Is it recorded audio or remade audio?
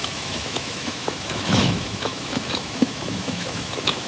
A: remade